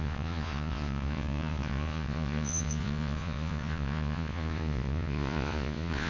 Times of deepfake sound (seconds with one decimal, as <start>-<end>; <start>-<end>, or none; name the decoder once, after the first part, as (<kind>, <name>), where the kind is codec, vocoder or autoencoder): 0.0-6.1 (vocoder, Vocos)